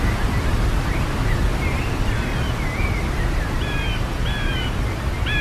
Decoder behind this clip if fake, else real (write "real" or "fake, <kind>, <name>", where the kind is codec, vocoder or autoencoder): real